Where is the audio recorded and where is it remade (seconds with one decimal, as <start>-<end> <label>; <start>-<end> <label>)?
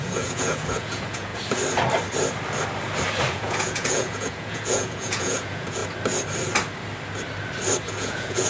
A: 0.0-1.3 remade; 1.3-3.3 recorded; 3.3-5.8 remade; 5.8-7.9 recorded; 7.9-8.5 remade